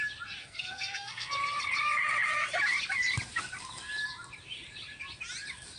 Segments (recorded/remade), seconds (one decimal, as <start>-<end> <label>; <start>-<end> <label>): 0.0-0.4 recorded; 0.4-1.3 remade; 1.3-5.8 recorded